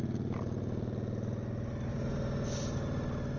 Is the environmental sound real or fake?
real